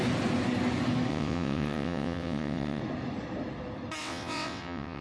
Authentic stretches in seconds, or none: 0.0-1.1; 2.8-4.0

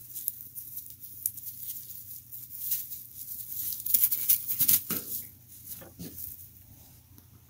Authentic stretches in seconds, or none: 0.0-6.0

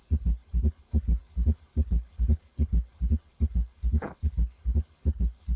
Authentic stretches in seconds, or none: none